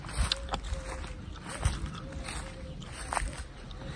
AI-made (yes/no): no